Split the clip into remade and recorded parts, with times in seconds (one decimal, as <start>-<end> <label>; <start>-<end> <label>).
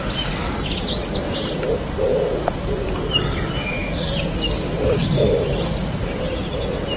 0.0-2.1 recorded; 2.1-6.2 remade; 6.2-7.0 recorded